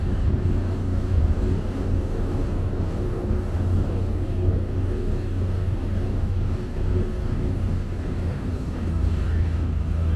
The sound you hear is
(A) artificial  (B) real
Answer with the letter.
A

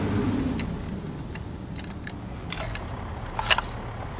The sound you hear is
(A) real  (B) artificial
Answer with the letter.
A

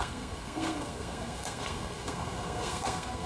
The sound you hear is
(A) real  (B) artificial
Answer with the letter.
B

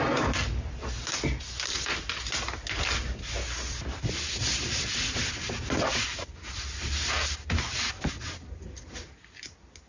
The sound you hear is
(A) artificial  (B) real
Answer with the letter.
B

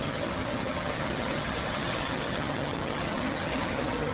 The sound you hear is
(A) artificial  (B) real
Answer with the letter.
A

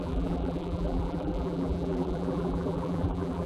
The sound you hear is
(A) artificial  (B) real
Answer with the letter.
A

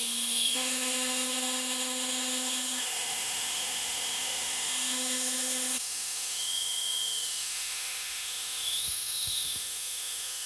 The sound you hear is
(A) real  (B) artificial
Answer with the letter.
B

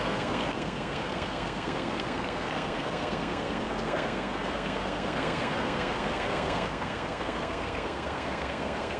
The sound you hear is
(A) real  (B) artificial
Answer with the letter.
B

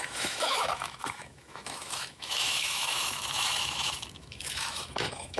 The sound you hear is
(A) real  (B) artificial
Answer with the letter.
B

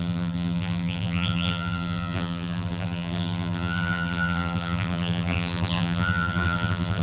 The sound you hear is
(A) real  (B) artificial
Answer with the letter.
B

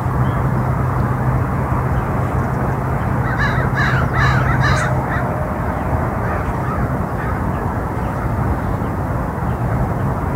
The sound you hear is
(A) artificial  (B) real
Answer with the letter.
B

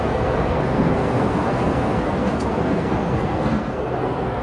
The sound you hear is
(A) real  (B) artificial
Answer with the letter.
B